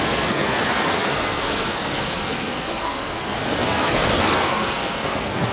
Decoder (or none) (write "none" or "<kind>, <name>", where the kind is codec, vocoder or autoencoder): codec, SNAC